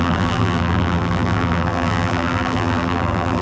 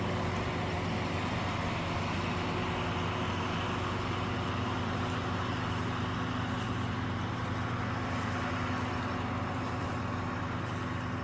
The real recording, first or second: second